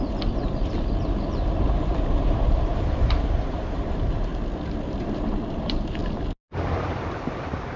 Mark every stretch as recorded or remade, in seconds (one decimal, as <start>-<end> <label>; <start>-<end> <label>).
0.0-4.3 remade; 4.3-4.9 recorded; 4.9-6.0 remade; 6.0-7.8 recorded